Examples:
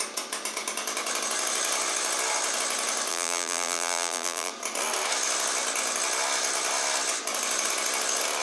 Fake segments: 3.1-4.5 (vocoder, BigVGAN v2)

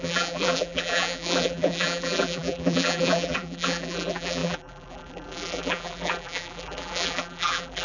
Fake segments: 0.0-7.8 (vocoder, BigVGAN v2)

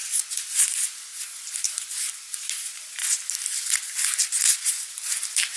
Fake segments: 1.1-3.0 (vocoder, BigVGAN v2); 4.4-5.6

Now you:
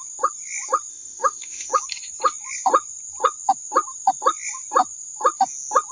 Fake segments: 0.9-1.7 (autoencoder, DAC-VAE)

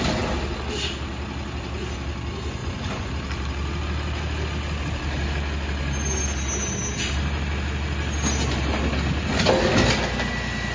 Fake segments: 2.6-3.1 (vocoder, Vocos)